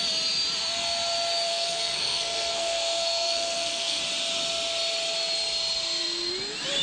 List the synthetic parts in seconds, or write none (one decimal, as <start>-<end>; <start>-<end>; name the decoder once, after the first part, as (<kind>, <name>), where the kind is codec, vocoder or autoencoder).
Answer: 1.5-4.0 (codec, SNAC)